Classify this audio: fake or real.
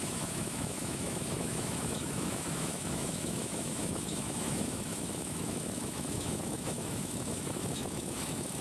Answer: fake